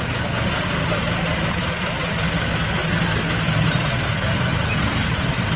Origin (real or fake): real